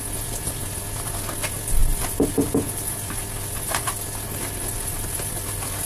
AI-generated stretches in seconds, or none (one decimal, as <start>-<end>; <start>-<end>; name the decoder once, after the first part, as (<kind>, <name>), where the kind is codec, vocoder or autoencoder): none